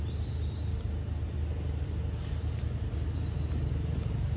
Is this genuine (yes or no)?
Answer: yes